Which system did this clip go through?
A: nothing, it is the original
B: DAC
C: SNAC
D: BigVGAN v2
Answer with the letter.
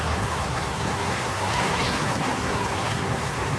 C